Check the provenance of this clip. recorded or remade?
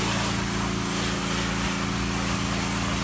recorded